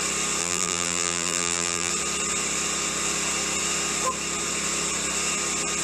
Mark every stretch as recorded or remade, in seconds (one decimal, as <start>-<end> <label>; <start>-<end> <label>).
0.0-0.4 recorded; 0.4-1.9 remade; 1.9-5.8 recorded